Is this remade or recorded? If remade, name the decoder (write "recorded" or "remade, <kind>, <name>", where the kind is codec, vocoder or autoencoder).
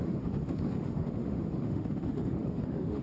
remade, autoencoder, DAC-VAE